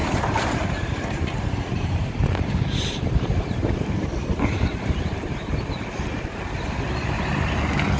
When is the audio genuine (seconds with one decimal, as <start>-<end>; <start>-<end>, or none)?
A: 4.1-5.0; 5.5-8.0